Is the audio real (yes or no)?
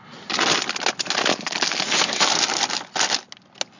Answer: yes